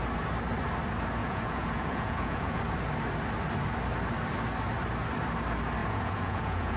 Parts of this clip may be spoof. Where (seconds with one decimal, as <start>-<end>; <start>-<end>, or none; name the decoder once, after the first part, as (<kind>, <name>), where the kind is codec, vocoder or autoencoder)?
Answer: 1.2-2.6 (vocoder, Vocos); 5.8-6.8